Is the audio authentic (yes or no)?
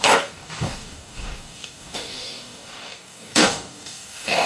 no